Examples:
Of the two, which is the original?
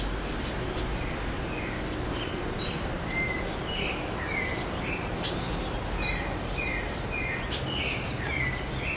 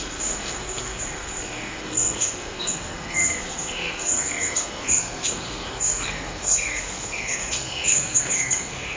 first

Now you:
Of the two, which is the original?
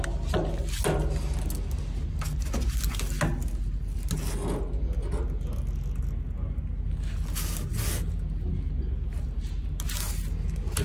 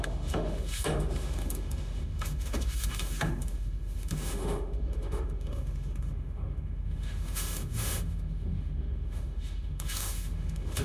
first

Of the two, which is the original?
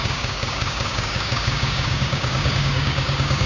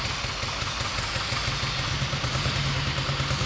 second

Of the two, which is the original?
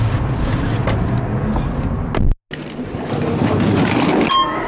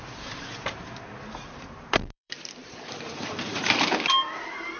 first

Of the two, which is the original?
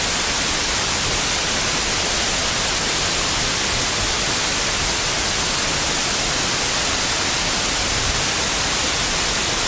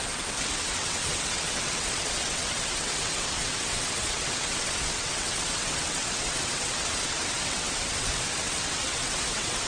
first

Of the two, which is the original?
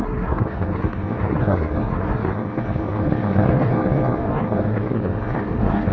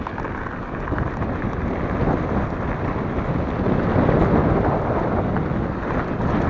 second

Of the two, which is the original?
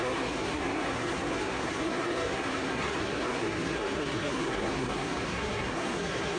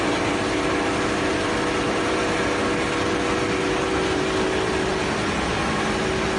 second